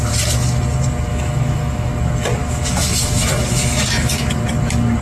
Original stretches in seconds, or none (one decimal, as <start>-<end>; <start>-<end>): 0.0-1.1; 1.9-2.4; 4.3-5.0